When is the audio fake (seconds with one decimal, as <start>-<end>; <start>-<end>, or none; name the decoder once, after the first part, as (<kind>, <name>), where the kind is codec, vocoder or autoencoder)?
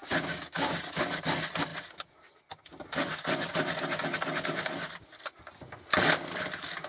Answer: 0.0-0.8 (codec, DAC)